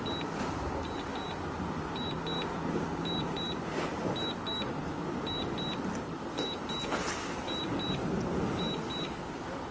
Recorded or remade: recorded